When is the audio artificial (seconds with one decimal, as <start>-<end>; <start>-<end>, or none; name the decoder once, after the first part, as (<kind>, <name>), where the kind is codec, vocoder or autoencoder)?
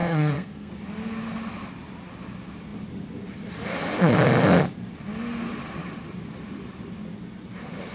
0.0-0.7 (codec, SNAC)